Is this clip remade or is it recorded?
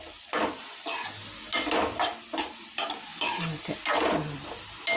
recorded